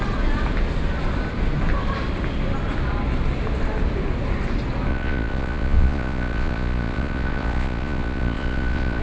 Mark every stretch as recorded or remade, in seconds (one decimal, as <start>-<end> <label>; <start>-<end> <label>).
0.0-4.9 recorded; 4.9-9.0 remade